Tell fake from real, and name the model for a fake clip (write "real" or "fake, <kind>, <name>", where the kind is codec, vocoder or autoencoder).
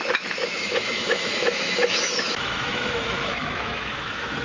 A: fake, autoencoder, DAC-VAE